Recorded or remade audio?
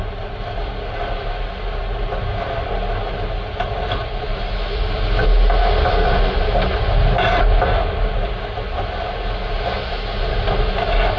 recorded